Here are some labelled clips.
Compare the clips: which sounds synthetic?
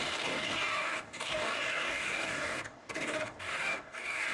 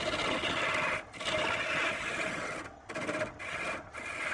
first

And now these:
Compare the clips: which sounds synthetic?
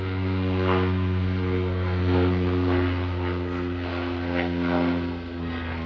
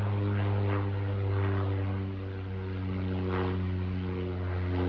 first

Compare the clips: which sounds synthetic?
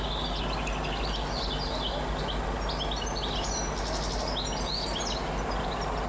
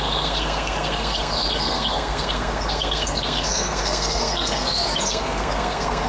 second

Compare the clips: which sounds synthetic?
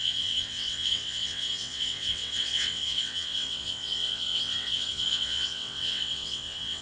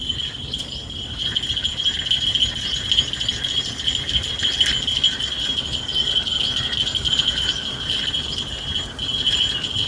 first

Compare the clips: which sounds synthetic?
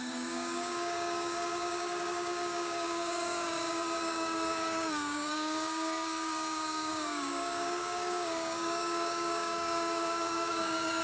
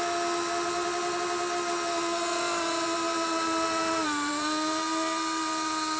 first